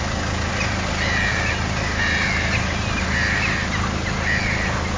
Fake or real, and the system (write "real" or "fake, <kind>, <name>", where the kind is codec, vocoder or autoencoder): real